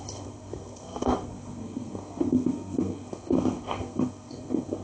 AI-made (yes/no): yes